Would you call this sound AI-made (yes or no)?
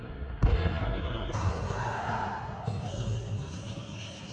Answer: yes